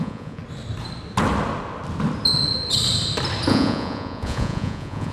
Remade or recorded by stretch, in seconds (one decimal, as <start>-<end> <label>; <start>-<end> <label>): 0.0-0.4 remade; 0.4-3.5 recorded; 3.5-5.1 remade